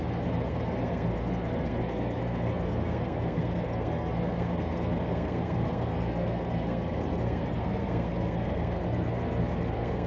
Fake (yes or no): yes